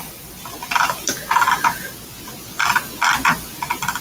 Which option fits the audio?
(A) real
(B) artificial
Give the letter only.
A